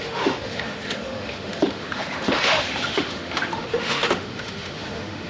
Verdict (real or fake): fake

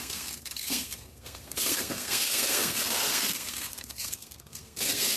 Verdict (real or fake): fake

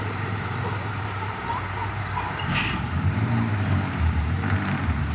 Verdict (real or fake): fake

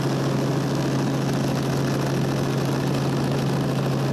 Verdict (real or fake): real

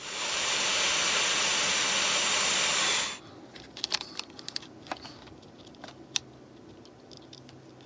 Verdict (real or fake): real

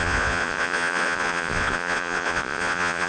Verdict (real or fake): fake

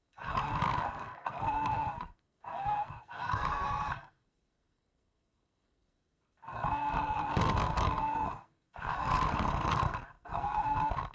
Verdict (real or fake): fake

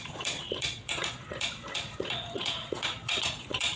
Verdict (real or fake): fake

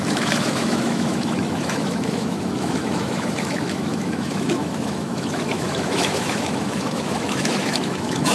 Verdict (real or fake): fake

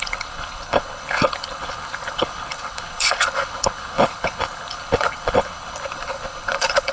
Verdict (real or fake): fake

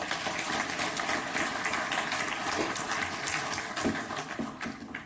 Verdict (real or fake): real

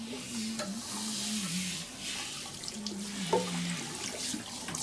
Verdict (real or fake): real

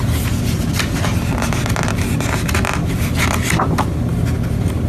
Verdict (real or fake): real